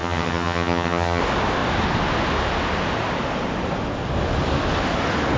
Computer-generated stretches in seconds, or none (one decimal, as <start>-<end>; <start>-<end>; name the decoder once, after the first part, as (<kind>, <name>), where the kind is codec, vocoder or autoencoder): 0.0-1.2 (vocoder, HiFi-GAN)